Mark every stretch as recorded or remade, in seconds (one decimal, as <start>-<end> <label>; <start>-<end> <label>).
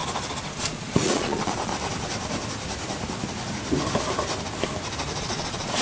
0.0-0.5 recorded; 0.5-1.7 remade; 1.7-5.2 recorded; 5.2-5.8 remade